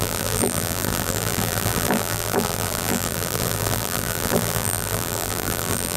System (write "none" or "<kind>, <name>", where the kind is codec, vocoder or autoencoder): vocoder, BigVGAN v2